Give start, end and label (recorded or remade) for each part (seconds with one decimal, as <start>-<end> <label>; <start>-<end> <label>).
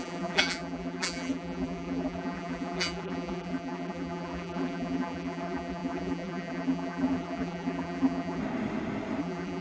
0.0-8.4 remade; 8.4-9.2 recorded; 9.2-9.6 remade